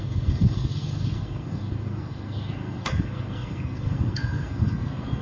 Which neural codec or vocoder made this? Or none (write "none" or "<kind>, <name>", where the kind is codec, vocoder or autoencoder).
codec, SNAC